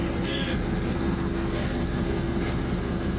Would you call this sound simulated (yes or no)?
yes